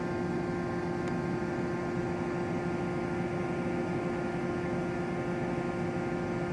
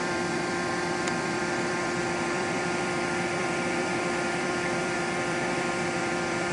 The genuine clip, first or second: first